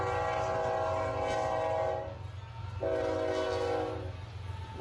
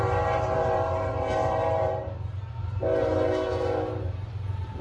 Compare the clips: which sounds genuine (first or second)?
first